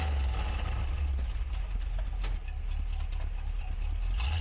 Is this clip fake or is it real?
real